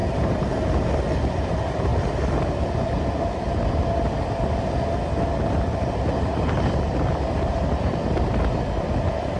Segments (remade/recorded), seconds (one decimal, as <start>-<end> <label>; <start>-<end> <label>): 0.0-0.5 remade; 0.5-5.7 recorded; 5.7-8.5 remade; 8.5-9.4 recorded